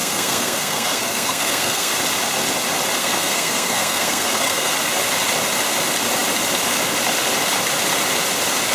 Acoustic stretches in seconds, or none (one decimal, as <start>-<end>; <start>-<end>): 1.9-3.0; 4.7-8.7